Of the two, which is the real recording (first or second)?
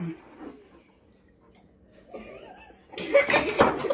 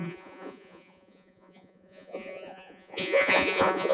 first